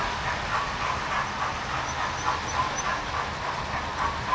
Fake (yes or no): no